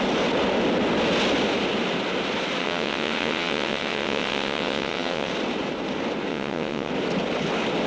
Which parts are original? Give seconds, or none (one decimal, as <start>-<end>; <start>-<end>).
0.0-2.6; 5.3-6.3; 6.9-7.9